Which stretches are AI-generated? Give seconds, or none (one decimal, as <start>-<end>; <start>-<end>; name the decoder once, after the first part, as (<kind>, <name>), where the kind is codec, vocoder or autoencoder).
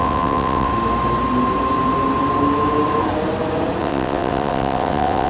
0.0-0.7 (vocoder, WaveNeXt); 3.8-5.3